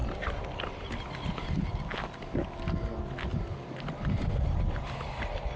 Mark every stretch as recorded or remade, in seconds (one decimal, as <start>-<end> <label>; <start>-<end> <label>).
0.0-3.3 recorded; 3.3-5.6 remade